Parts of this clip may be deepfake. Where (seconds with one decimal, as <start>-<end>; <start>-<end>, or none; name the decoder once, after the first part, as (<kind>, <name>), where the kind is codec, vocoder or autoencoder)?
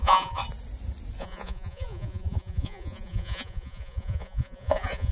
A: 0.0-0.4 (vocoder, Vocos); 1.2-5.1